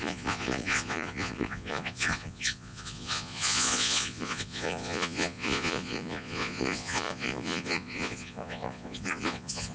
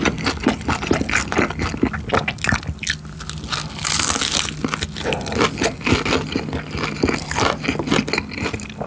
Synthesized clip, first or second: first